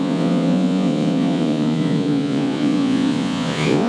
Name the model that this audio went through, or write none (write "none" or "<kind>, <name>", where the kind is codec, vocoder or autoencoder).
vocoder, Vocos